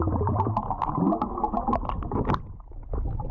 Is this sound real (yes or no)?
yes